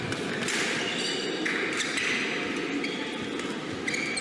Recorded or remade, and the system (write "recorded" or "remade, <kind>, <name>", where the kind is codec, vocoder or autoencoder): recorded